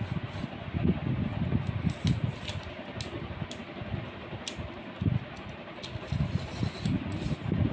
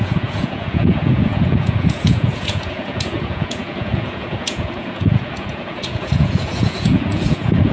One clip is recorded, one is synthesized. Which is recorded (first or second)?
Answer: first